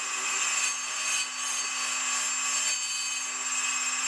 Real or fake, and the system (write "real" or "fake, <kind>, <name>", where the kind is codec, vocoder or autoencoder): real